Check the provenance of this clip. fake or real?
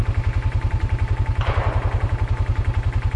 real